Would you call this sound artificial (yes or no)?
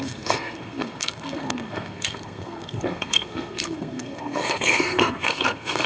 yes